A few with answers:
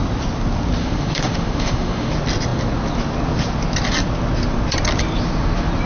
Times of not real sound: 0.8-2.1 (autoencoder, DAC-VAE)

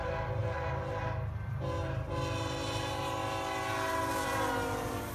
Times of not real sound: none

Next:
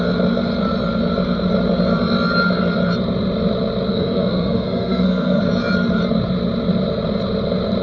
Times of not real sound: 3.9-5.4 (codec, SNAC)

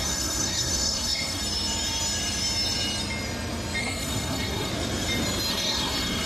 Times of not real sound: 0.0-1.4 (codec, SNAC); 3.8-4.7; 5.5-6.3